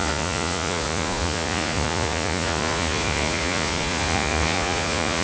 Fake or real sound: fake